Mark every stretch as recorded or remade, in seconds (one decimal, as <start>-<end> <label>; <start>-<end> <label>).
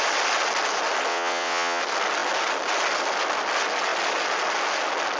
0.0-1.1 recorded; 1.1-1.8 remade; 1.8-5.2 recorded